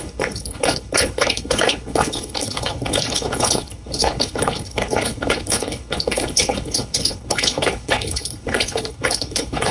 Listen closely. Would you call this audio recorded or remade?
remade